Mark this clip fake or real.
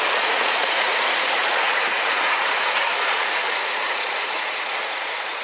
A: fake